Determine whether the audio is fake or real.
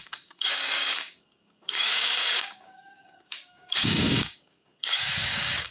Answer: fake